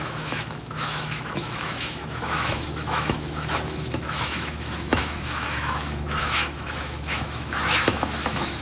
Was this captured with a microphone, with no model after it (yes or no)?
no